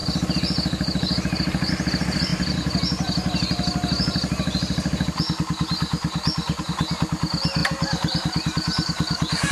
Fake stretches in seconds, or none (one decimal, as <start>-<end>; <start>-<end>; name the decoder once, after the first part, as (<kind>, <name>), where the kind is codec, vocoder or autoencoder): 7.6-9.5 (vocoder, BigVGAN v2)